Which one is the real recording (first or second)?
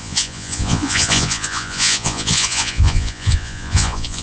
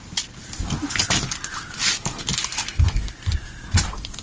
second